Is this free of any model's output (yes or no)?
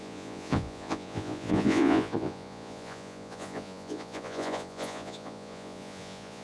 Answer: no